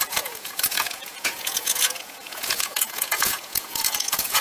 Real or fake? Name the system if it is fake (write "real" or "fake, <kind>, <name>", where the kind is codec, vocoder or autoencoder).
fake, vocoder, Vocos